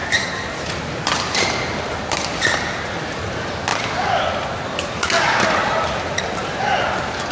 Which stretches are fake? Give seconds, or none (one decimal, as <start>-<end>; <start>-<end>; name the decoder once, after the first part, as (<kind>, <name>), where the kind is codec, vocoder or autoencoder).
0.0-3.0 (vocoder, BigVGAN v2)